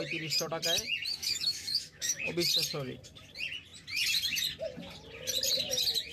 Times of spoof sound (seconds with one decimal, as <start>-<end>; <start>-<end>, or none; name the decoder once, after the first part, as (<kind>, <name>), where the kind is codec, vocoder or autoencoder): 1.2-2.2 (autoencoder, DAC-VAE)